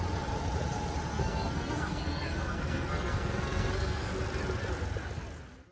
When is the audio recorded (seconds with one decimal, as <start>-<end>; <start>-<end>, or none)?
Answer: 0.0-1.1; 4.1-5.7